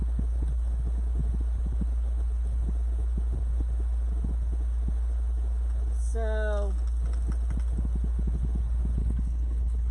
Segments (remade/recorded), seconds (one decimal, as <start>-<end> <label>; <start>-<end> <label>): 0.0-9.0 recorded; 9.0-9.9 remade